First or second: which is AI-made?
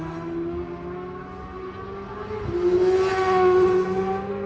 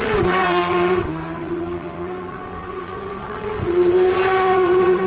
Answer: second